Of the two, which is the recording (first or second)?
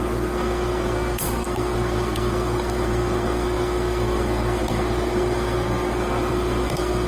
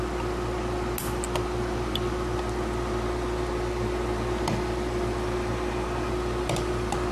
second